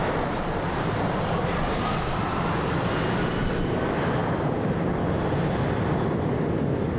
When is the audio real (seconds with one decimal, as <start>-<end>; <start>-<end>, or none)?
1.6-4.2; 4.9-7.0